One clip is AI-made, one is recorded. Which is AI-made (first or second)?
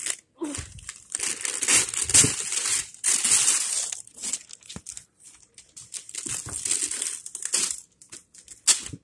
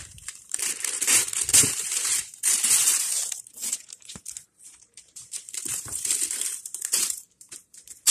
second